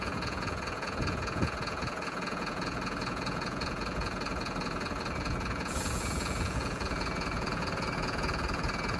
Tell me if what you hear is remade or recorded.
remade